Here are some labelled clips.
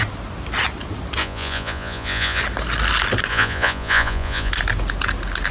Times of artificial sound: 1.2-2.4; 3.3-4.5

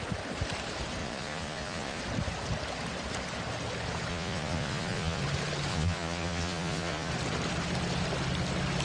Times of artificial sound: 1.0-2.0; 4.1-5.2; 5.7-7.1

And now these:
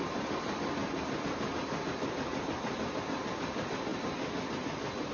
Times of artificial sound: none

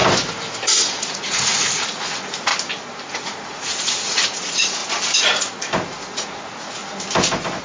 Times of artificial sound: 1.0-2.5; 3.1-4.8; 6.0-6.8